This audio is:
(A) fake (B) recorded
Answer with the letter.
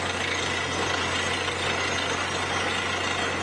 B